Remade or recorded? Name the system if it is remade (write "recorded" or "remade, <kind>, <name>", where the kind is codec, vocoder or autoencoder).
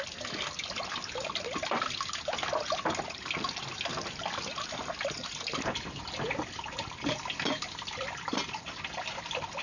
recorded